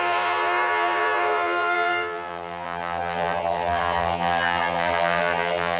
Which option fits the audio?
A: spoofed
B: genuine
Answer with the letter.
A